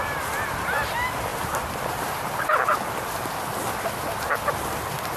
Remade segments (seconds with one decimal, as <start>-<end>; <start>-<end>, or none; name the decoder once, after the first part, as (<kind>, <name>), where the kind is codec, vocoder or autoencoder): 0.0-1.3 (vocoder, BigVGAN v2); 4.4-5.2